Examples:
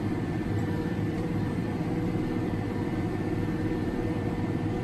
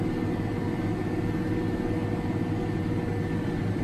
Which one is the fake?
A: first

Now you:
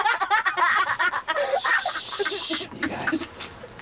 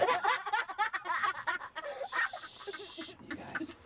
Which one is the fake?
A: second